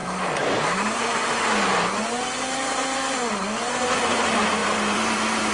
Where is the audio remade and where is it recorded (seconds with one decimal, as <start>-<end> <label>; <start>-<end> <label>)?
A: 0.0-3.3 remade; 3.3-4.6 recorded; 4.6-5.5 remade